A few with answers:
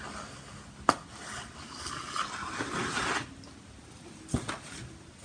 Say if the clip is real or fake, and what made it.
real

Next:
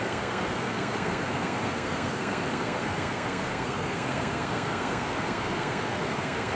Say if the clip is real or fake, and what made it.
fake, codec, SNAC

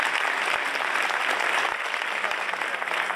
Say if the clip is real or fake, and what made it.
real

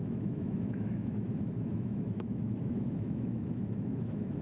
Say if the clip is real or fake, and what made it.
fake, autoencoder, DAC-VAE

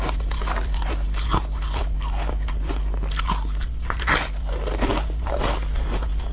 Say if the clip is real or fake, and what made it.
real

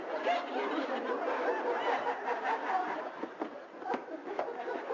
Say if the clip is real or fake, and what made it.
real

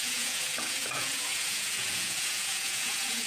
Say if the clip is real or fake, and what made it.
fake, vocoder, Vocos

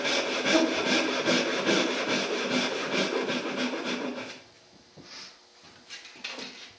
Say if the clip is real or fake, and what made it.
real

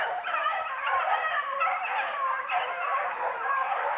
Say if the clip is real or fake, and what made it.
fake, vocoder, BigVGAN v2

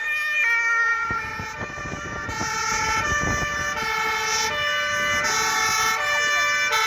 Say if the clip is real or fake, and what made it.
real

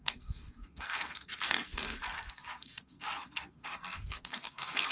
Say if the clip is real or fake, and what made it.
fake, codec, SNAC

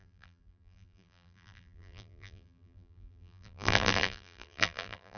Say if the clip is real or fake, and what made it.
fake, vocoder, BigVGAN v2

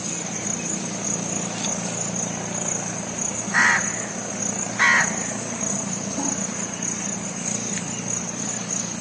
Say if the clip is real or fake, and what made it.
real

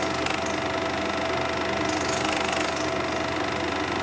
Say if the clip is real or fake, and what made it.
real